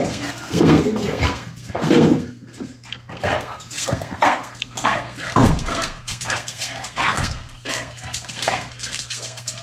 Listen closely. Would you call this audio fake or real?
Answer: fake